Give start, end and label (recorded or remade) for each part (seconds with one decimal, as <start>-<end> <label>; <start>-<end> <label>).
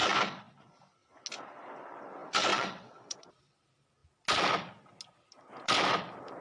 0.0-2.5 recorded; 2.5-3.3 remade; 3.3-6.4 recorded